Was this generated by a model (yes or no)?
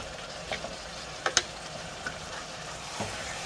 yes